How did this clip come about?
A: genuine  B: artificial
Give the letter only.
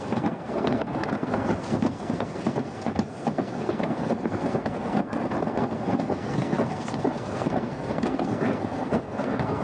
B